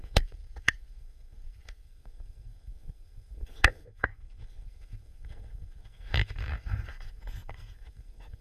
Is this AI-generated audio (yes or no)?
yes